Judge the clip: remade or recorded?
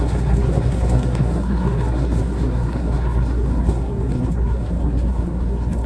remade